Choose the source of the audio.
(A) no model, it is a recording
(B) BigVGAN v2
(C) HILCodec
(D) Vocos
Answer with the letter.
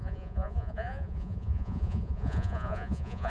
D